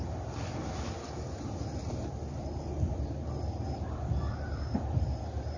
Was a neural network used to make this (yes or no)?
no